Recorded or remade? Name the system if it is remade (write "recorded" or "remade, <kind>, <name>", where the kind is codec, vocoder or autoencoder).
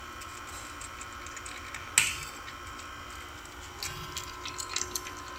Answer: recorded